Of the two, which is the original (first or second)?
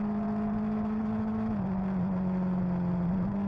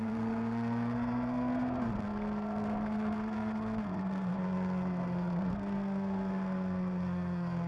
first